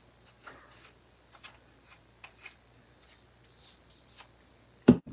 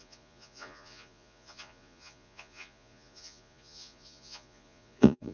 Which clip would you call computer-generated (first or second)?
second